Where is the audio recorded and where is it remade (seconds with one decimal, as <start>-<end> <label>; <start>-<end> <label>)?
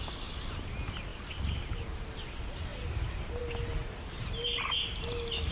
0.0-5.5 recorded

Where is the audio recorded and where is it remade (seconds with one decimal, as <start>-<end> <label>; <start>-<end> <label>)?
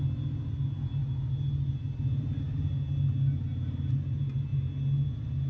0.0-5.5 recorded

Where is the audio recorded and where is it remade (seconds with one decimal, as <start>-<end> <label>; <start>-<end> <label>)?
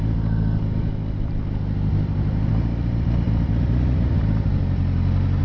0.0-5.4 recorded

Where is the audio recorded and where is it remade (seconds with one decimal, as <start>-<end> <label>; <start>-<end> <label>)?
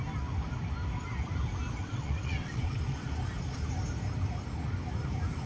0.0-1.8 recorded; 1.8-3.1 remade; 3.1-5.5 recorded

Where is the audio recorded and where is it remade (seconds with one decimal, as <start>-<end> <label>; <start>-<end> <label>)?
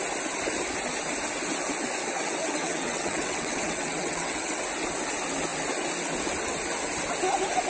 0.0-2.0 recorded; 2.0-4.6 remade; 4.6-7.7 recorded